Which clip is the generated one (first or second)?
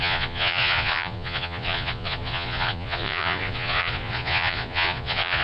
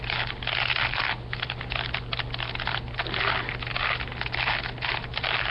first